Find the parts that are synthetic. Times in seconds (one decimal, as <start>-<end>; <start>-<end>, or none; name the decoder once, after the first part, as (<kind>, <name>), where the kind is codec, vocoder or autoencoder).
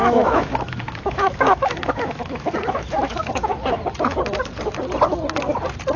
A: 0.0-3.5 (autoencoder, DAC-VAE)